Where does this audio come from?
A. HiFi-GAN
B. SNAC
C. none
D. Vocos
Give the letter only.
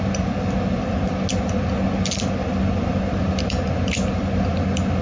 C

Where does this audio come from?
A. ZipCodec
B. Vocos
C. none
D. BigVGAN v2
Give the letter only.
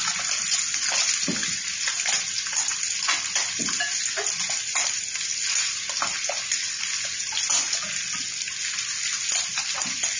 C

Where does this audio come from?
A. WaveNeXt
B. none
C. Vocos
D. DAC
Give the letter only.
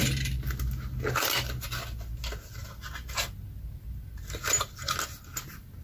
B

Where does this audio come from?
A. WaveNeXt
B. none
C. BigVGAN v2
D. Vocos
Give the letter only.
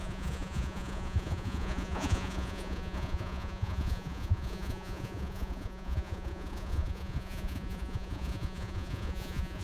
D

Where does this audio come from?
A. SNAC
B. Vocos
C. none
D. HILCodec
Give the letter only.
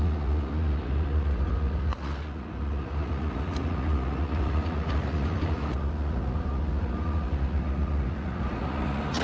B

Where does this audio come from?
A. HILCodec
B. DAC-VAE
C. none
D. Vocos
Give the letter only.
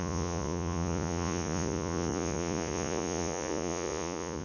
D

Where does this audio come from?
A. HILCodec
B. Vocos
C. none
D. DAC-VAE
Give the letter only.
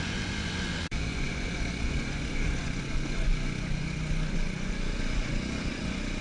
B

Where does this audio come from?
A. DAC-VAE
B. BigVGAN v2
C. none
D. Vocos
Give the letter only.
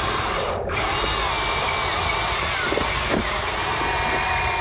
C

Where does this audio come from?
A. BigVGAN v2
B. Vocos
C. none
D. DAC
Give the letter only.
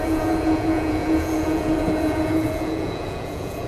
B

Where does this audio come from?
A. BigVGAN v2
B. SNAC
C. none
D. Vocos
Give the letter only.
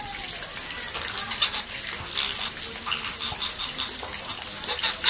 C